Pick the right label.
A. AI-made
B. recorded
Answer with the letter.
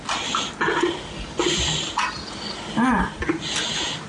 B